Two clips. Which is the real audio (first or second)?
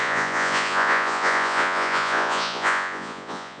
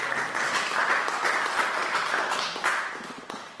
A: second